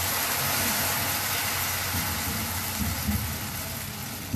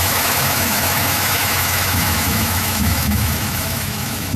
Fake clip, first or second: second